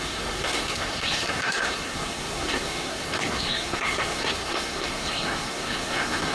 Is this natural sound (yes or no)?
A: no